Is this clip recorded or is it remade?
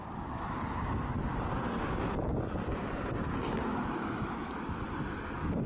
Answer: recorded